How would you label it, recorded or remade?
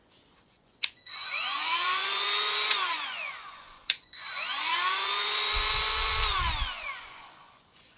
remade